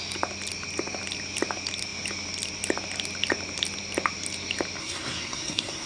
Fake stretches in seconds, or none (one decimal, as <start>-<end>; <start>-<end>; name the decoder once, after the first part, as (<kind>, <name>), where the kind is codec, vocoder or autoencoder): 4.8-5.9 (codec, SNAC)